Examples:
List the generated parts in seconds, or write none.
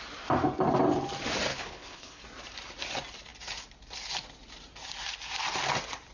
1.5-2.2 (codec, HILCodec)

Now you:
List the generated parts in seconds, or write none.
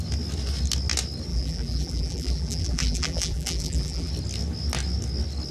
1.3-4.1 (vocoder, BigVGAN v2)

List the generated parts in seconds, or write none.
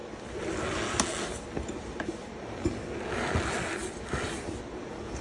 none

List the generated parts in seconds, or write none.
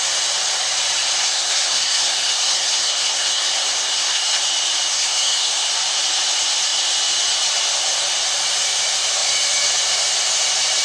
1.2-4.4 (codec, SNAC); 4.9-5.7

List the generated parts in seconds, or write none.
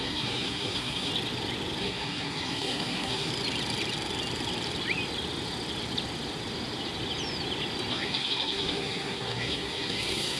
0.0-1.1 (codec, SNAC); 1.8-3.3; 7.9-10.4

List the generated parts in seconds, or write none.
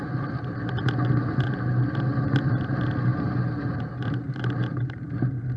none